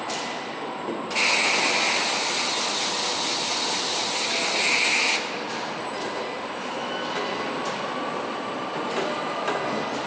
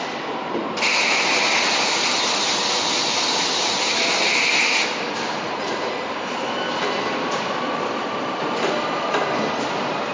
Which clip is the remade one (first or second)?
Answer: second